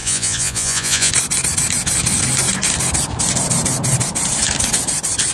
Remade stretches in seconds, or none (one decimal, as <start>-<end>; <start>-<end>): 0.0-1.1